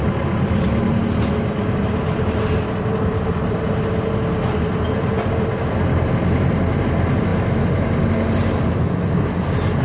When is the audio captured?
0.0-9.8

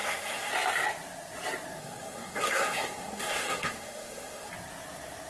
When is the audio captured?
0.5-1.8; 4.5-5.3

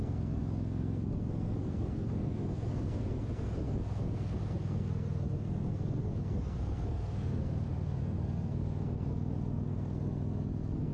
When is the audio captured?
none